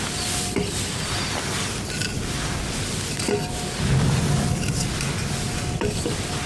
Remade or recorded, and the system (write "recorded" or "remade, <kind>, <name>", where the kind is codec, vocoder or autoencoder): recorded